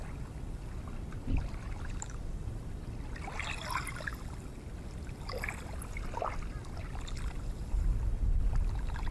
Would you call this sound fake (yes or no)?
no